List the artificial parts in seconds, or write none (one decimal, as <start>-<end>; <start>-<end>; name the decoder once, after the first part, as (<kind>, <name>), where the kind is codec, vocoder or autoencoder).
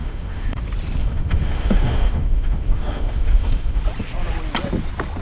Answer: 0.0-0.6 (autoencoder, DAC-VAE); 1.0-3.8